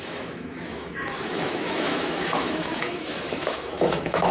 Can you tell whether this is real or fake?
fake